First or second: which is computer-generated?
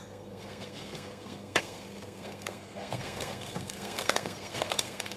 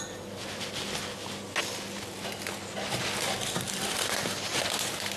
first